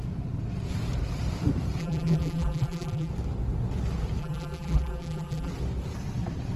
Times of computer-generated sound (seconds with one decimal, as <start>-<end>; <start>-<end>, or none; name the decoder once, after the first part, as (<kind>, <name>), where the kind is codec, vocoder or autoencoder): 1.8-3.1 (vocoder, BigVGAN v2); 4.2-5.5